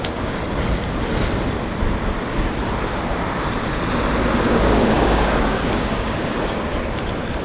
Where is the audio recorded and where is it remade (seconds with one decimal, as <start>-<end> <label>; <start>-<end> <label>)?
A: 0.0-0.4 remade; 0.4-4.3 recorded; 4.3-6.7 remade; 6.7-7.4 recorded